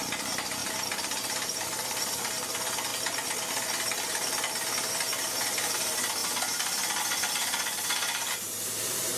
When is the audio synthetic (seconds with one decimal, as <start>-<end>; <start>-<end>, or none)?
none